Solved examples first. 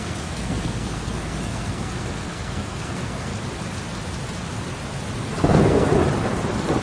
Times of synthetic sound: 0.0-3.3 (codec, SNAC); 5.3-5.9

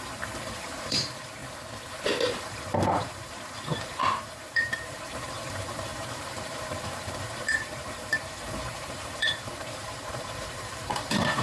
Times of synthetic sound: 0.0-1.4 (vocoder, BigVGAN v2); 2.3-11.4

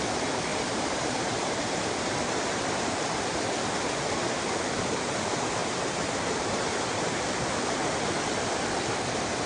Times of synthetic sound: 0.5-2.6 (vocoder, BigVGAN v2); 5.6-7.2

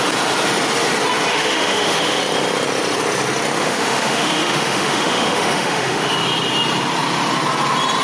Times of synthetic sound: 1.3-2.2 (autoencoder, DAC-VAE); 3.6-6.1

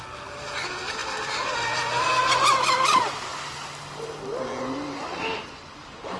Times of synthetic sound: none